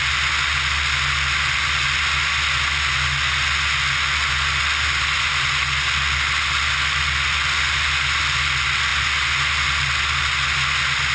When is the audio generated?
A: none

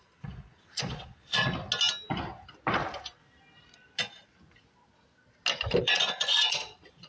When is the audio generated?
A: 0.0-1.5 (vocoder, Vocos); 5.8-7.1

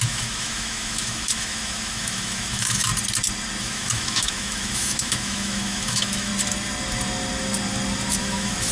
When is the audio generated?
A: 0.0-2.9 (autoencoder, DAC-VAE); 3.6-6.3; 8.2-8.7

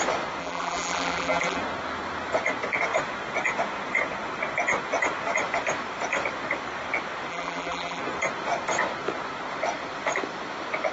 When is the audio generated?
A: 0.4-1.6 (vocoder, BigVGAN v2); 7.3-8.0

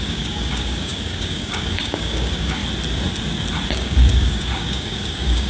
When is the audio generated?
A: 0.0-2.6 (codec, DAC); 3.7-5.5